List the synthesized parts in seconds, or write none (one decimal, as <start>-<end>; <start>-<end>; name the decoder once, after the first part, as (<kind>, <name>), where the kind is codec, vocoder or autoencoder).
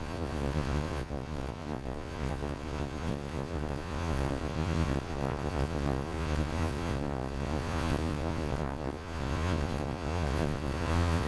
0.0-11.3 (vocoder, Vocos)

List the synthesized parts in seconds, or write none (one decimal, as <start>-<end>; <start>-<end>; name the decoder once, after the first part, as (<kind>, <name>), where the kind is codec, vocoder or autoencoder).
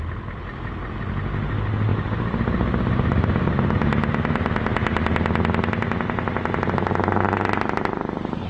none